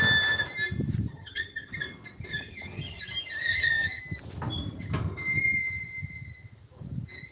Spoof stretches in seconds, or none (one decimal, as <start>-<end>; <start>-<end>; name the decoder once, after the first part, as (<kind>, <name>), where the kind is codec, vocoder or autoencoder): 1.1-1.8 (vocoder, HiFi-GAN); 2.3-3.0; 3.5-4.0